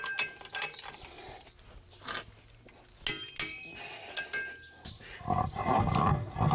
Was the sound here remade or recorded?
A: recorded